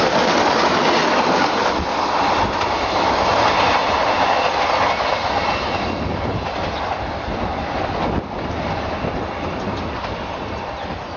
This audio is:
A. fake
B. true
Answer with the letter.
B